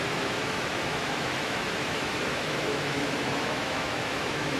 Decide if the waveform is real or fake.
fake